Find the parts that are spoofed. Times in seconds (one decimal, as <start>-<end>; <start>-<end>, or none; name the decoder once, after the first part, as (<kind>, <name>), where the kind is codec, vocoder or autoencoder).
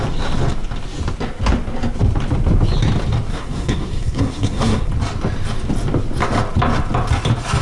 3.3-4.9 (codec, SNAC)